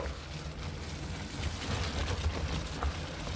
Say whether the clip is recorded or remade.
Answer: recorded